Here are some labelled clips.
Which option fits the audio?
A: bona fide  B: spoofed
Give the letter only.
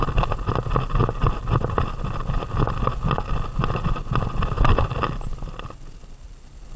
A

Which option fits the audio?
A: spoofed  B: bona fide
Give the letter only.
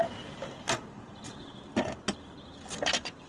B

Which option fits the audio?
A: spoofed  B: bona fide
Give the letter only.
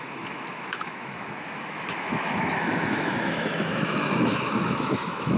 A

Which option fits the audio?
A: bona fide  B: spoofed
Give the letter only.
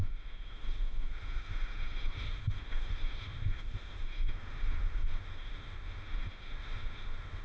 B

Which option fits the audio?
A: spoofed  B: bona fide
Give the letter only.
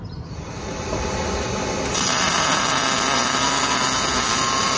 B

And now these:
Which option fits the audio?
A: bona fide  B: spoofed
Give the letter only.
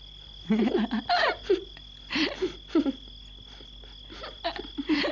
A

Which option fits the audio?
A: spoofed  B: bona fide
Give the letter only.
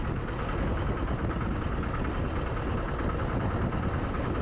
B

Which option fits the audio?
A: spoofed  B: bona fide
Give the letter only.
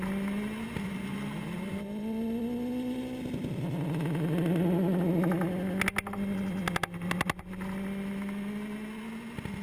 B